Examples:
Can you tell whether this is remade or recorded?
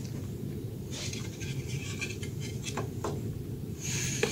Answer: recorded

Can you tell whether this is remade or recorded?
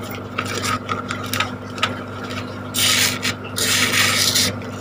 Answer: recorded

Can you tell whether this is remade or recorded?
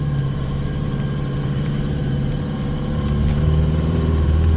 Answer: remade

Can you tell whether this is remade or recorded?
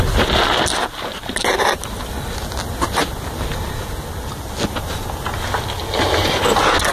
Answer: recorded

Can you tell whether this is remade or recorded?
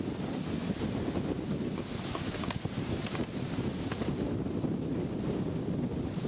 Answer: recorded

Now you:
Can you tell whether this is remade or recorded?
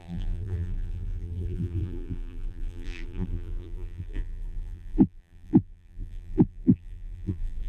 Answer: remade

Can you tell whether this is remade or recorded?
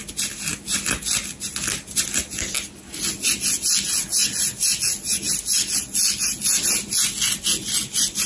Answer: recorded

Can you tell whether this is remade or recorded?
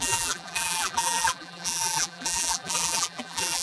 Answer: remade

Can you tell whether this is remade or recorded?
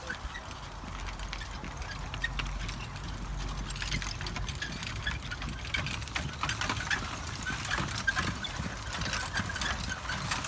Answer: recorded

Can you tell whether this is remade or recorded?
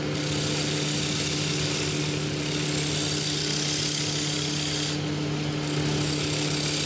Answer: recorded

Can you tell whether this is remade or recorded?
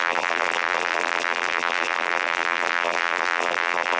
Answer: remade